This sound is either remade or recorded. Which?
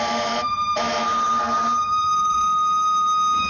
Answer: remade